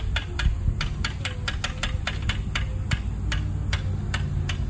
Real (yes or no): yes